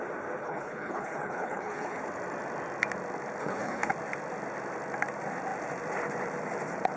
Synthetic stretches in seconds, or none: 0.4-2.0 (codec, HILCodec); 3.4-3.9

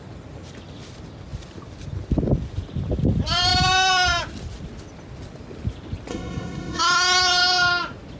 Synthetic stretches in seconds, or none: 6.1-6.8 (codec, SNAC)